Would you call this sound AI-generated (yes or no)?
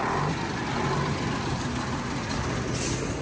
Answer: no